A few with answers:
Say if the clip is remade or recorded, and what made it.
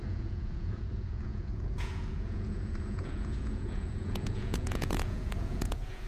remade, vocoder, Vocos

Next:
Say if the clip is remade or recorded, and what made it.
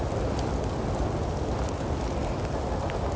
recorded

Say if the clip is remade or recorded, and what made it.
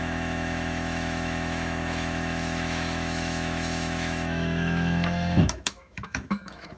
remade, autoencoder, DAC-VAE